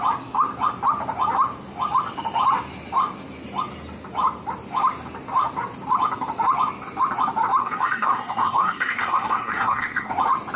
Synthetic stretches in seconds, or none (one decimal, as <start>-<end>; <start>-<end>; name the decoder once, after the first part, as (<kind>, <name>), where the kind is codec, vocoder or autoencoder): 7.6-10.1 (codec, SNAC)